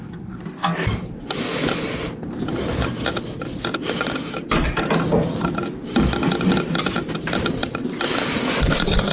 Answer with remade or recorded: recorded